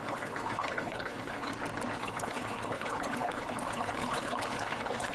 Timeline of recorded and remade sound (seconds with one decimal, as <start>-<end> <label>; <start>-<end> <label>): 0.0-1.5 remade; 1.5-2.0 recorded; 2.0-5.1 remade